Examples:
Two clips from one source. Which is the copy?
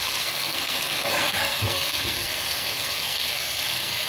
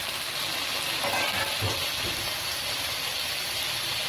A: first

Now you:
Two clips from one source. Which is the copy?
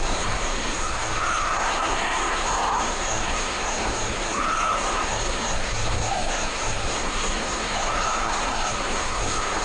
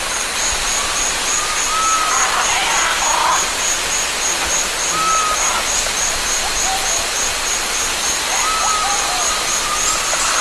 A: first